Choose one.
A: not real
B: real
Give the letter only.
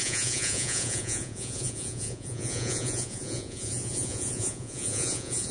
A